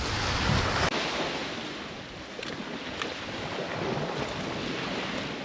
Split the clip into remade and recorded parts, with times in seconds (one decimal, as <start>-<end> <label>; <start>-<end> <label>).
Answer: 0.0-5.4 recorded